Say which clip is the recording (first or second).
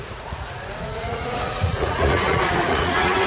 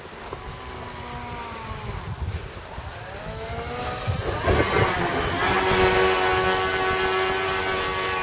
second